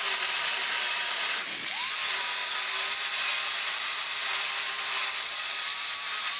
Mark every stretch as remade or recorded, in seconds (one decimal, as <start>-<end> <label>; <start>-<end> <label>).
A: 0.0-6.4 recorded